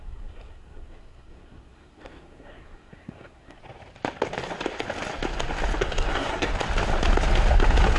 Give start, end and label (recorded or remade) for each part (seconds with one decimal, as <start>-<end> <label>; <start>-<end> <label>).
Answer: 0.0-3.6 remade; 3.6-5.8 recorded; 5.8-6.5 remade; 6.5-8.0 recorded